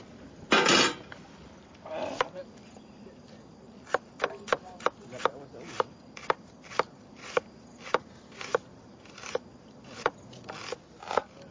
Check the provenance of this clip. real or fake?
fake